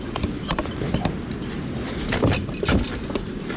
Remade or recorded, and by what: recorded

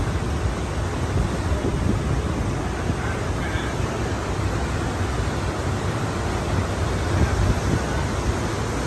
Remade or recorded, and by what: recorded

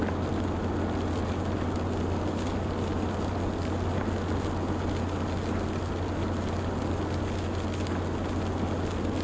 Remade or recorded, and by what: recorded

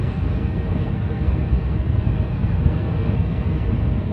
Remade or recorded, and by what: remade, codec, SNAC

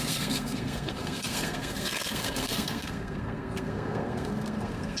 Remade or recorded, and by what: remade, codec, SNAC